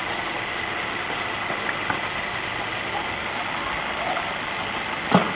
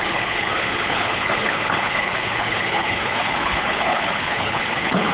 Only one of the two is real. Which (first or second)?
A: first